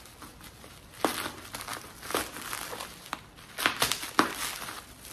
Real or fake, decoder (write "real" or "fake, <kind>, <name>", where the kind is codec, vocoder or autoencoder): real